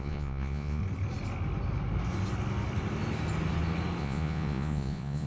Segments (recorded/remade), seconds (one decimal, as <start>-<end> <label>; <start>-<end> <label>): 0.0-0.8 remade; 0.8-4.0 recorded; 4.0-5.3 remade